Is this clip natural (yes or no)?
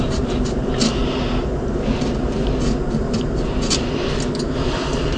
yes